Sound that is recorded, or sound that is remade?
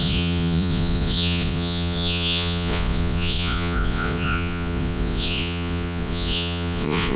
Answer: remade